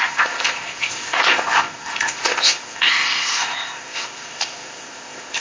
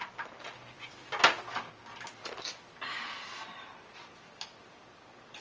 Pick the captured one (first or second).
second